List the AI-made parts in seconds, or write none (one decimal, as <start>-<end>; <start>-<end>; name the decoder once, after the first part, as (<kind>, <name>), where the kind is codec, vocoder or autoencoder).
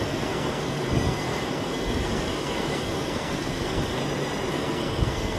0.0-4.0 (codec, SNAC); 4.5-5.4